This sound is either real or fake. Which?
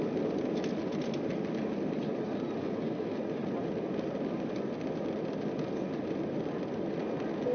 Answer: real